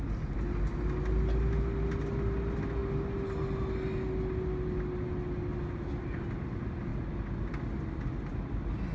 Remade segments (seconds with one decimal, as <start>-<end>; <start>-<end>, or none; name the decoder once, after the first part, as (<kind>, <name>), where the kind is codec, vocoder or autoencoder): none